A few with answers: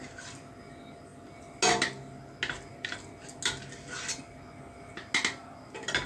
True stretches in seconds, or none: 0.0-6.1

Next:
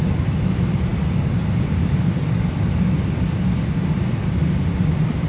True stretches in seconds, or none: 0.0-5.3

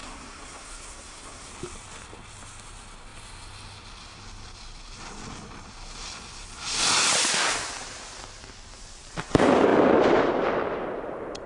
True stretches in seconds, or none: 1.5-11.5

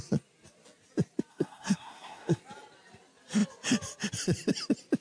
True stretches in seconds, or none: 0.0-1.3; 2.4-5.0

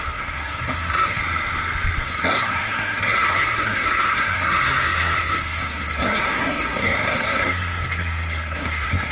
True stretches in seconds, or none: 1.2-2.0

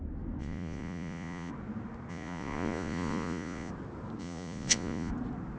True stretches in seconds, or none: 0.0-0.4; 1.5-2.1; 3.7-4.2; 5.1-5.6

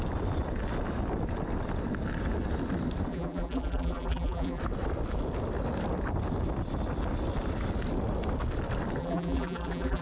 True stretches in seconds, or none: 0.0-3.1; 4.6-9.0

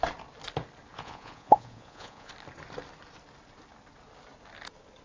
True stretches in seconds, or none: 0.0-0.9; 2.3-5.0